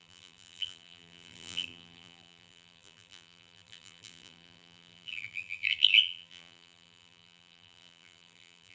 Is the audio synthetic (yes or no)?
yes